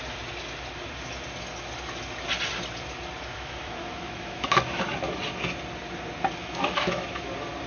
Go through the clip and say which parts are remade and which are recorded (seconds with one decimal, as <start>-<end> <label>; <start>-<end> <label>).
0.0-3.3 recorded; 3.3-4.8 remade; 4.8-6.4 recorded; 6.4-7.3 remade; 7.3-7.7 recorded